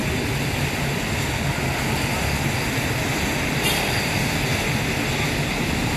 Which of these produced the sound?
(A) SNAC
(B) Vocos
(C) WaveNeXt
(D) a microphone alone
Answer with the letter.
D